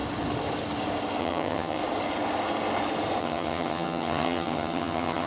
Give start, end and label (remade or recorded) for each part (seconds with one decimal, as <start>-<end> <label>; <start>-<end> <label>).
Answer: 0.0-1.2 recorded; 1.2-1.8 remade; 1.8-3.2 recorded; 3.2-5.3 remade

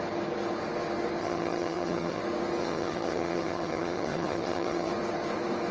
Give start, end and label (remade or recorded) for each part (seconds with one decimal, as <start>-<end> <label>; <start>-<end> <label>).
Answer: 0.0-1.2 recorded; 1.2-2.2 remade; 2.2-2.6 recorded; 2.6-4.9 remade; 4.9-5.7 recorded